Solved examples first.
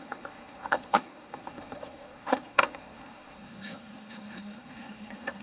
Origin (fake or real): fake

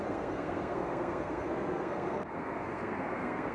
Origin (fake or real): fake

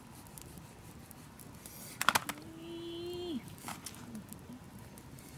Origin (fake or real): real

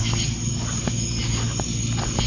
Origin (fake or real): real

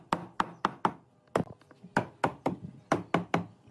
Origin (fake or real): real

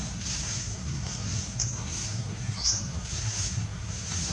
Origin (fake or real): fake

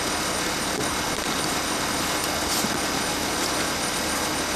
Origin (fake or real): real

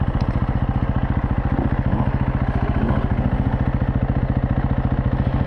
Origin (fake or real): real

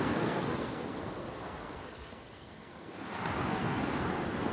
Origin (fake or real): fake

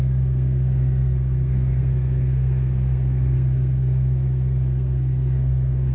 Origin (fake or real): fake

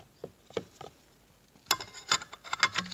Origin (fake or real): real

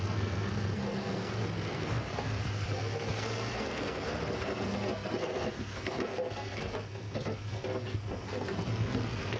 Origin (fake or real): fake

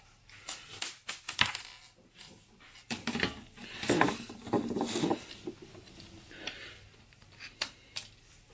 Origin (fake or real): real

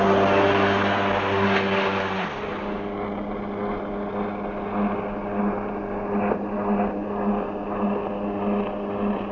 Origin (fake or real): real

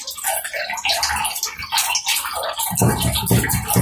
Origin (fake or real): real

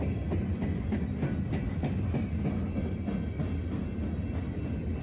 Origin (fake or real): real